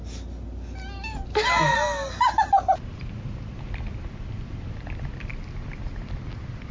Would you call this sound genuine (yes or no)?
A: yes